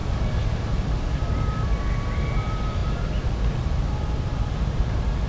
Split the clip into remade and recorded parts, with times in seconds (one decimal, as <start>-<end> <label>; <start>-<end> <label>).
0.0-5.3 recorded